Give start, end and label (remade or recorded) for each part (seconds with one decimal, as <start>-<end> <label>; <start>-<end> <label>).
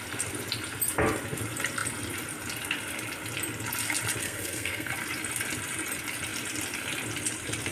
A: 0.0-4.2 recorded; 4.2-4.9 remade; 4.9-7.7 recorded